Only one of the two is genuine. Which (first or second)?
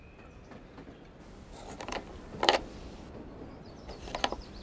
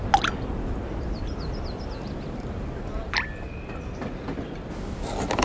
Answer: second